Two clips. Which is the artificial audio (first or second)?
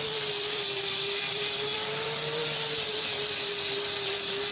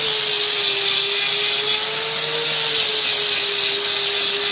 first